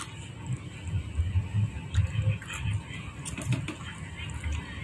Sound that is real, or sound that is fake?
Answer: real